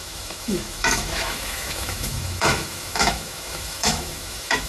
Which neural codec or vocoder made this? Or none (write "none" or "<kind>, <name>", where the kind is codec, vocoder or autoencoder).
autoencoder, DAC-VAE